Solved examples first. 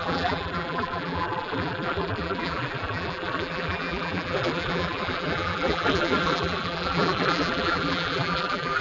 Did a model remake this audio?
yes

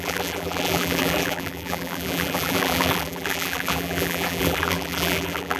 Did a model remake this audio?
yes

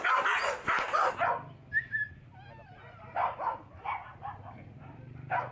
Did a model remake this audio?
no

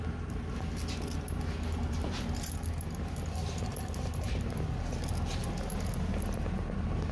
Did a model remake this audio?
no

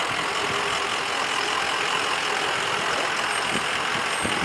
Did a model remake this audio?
no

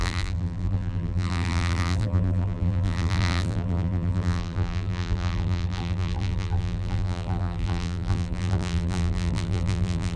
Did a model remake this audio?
yes